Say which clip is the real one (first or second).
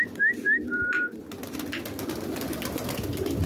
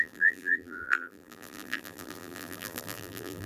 first